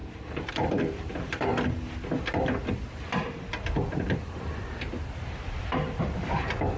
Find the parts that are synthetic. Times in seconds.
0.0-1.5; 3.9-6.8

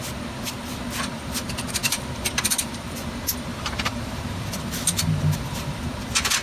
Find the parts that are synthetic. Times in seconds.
3.5-5.8

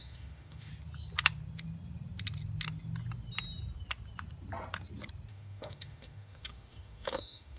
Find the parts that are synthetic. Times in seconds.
0.0-0.7; 5.3-7.6

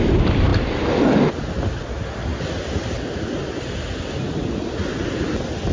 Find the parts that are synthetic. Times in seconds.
none

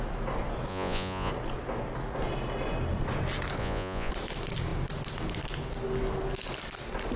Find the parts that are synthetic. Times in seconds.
0.7-1.3; 3.6-4.1

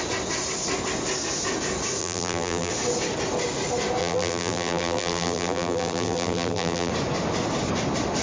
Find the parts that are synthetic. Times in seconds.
2.0-2.7; 4.0-6.9

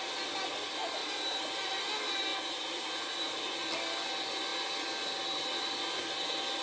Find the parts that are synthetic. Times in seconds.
1.0-1.8; 2.3-2.9

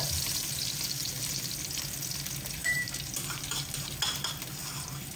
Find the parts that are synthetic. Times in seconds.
2.6-4.0